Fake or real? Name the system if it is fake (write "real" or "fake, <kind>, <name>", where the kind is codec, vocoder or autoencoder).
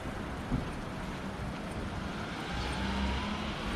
real